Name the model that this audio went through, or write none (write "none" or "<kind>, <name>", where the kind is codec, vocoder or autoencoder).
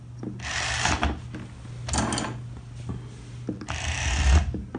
none